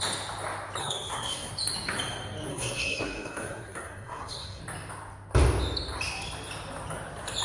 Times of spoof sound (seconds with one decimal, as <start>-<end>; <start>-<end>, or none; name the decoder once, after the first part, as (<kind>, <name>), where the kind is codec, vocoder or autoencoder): 0.8-1.5 (codec, SNAC); 2.5-4.6